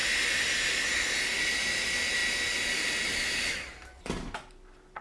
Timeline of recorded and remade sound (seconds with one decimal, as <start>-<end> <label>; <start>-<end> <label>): 0.0-5.0 recorded